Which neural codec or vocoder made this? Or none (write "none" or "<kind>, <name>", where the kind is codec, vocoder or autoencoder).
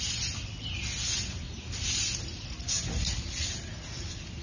none